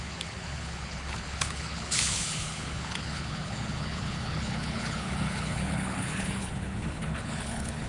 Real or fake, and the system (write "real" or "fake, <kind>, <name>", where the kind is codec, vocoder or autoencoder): fake, codec, HILCodec